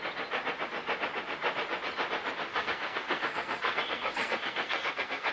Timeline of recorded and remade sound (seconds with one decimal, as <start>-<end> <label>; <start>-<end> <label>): 0.0-2.5 recorded; 2.5-5.3 remade